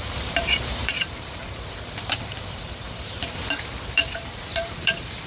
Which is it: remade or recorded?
remade